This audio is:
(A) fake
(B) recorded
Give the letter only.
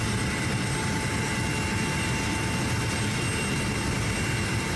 B